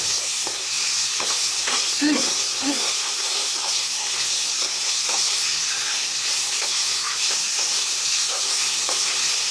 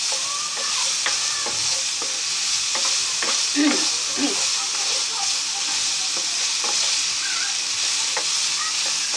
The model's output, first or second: first